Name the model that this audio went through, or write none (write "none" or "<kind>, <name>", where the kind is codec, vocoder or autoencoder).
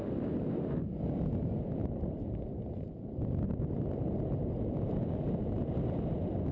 none